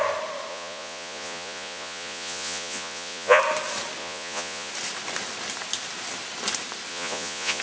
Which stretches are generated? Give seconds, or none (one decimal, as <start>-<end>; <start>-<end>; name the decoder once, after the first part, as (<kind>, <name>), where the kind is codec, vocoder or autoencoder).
0.5-3.4 (vocoder, Vocos); 4.0-4.7; 6.9-7.6